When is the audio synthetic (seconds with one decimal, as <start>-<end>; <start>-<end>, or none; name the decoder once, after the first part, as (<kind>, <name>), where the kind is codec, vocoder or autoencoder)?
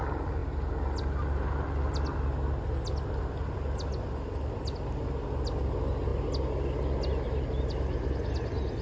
none